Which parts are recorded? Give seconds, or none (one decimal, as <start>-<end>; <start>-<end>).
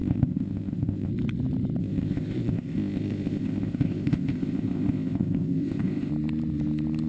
1.1-1.8; 6.1-7.1